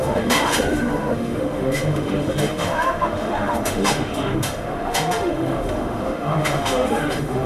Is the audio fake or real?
fake